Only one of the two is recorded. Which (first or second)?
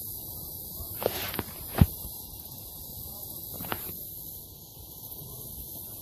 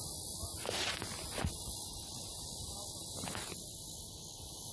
second